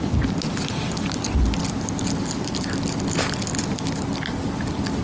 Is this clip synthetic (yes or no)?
no